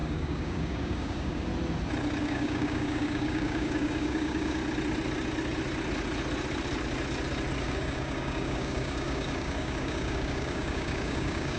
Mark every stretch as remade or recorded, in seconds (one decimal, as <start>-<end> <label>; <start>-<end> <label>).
0.0-1.5 remade; 1.5-2.2 recorded; 2.2-4.6 remade; 4.6-7.6 recorded; 7.6-11.6 remade